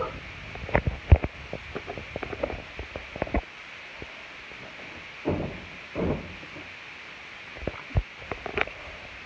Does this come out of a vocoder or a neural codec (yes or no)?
no